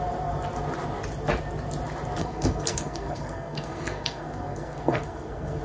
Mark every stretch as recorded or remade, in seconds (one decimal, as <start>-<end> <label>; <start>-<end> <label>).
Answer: 0.0-2.2 recorded; 2.2-5.6 remade